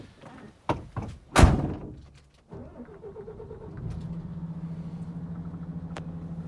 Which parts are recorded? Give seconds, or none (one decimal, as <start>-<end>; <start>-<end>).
0.0-6.5